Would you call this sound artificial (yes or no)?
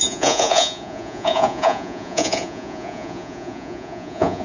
yes